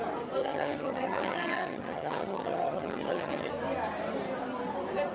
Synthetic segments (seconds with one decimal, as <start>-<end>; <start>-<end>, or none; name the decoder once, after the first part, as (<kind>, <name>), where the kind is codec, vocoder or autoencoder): 0.4-3.5 (vocoder, HiFi-GAN)